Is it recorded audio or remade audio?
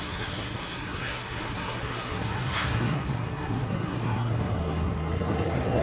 remade